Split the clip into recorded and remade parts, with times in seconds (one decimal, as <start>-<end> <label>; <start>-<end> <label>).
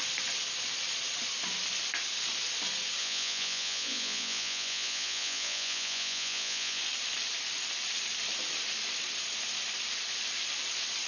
0.0-3.0 recorded; 3.0-6.8 remade; 6.8-11.1 recorded